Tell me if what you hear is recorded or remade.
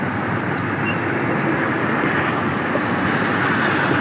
recorded